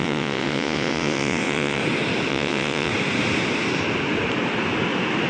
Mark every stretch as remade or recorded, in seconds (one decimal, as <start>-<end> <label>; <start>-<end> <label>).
0.0-1.8 remade; 1.8-2.3 recorded; 2.3-2.9 remade; 2.9-5.3 recorded